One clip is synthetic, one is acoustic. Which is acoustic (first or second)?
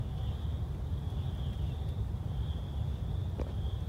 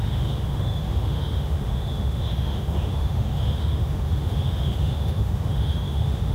first